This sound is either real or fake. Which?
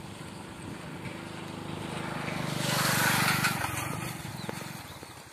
real